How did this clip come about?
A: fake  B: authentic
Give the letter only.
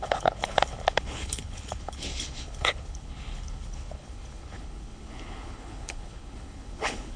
A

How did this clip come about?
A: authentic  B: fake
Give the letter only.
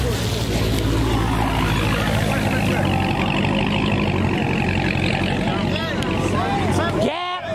A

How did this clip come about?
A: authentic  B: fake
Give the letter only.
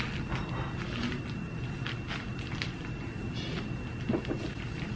A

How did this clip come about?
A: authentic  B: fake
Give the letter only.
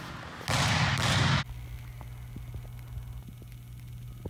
A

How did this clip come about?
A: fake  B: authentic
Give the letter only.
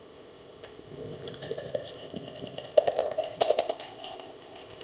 A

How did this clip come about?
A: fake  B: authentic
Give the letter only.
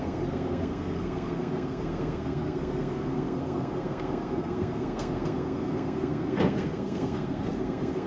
A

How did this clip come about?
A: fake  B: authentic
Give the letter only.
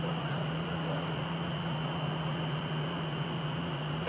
A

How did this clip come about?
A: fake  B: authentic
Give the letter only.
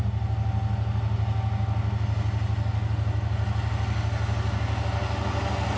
B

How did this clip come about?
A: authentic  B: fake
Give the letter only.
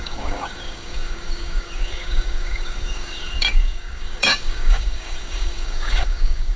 B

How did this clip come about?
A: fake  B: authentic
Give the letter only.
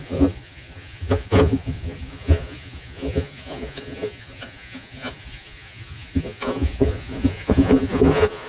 A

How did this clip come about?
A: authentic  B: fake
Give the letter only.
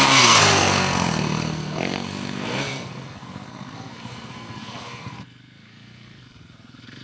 B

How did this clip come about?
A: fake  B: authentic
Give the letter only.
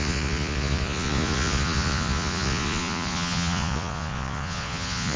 A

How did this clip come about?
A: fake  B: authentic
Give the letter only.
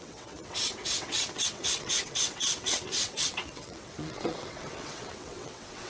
A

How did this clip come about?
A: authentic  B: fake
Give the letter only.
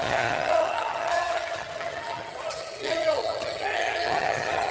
B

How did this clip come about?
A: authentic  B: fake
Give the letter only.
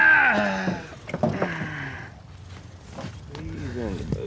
A